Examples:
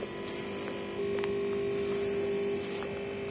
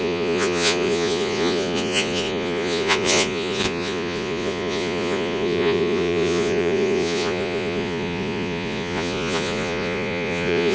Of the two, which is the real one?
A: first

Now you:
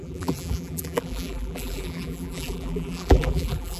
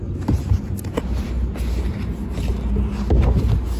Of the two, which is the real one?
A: second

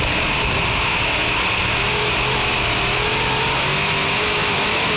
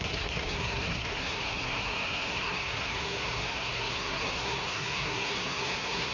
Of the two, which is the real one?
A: first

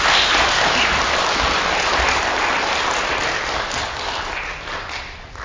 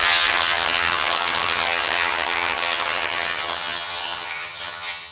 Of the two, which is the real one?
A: first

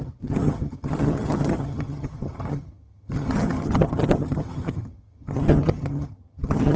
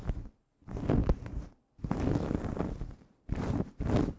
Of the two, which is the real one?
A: second